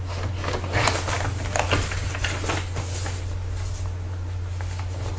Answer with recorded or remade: recorded